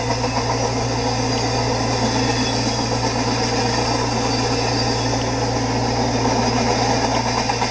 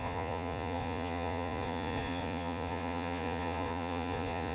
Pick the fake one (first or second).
second